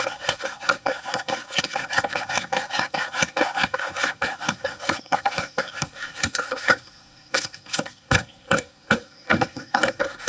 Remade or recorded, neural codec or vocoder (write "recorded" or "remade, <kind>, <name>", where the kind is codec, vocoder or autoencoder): remade, codec, SNAC